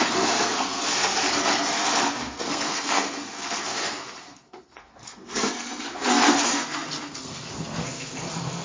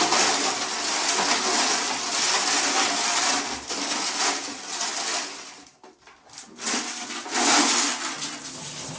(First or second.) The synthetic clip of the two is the first